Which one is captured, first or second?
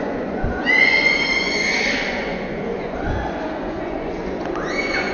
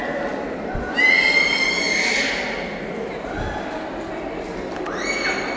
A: second